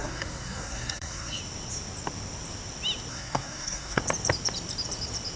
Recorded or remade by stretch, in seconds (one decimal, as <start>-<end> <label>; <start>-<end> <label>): 0.0-1.4 remade; 1.4-3.1 recorded; 3.1-4.0 remade; 4.0-5.4 recorded